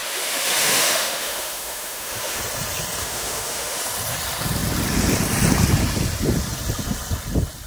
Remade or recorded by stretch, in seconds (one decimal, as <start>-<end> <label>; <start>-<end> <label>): 0.0-2.4 remade; 2.4-3.0 recorded; 3.0-3.8 remade; 3.8-7.7 recorded